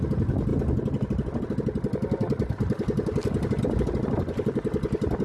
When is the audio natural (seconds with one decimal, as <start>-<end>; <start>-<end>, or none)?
0.0-5.2